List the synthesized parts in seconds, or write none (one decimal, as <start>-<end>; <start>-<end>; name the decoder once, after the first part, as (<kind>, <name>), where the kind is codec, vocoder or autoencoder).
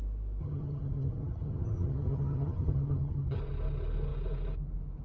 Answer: 0.4-3.4 (vocoder, HiFi-GAN)